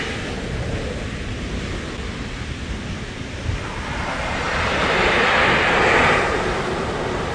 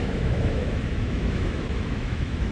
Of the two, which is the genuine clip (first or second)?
first